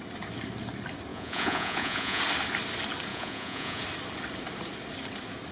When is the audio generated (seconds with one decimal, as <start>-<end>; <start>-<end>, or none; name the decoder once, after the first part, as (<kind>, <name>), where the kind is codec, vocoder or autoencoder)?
1.1-2.2 (vocoder, Vocos); 3.1-3.8